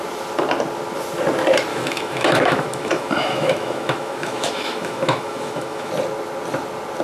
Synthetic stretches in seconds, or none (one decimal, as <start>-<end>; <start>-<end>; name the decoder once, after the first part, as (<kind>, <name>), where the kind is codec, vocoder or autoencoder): 1.7-5.9 (autoencoder, DAC-VAE)